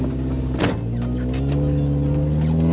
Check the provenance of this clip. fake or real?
real